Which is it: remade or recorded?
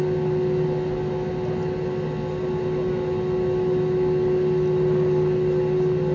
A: recorded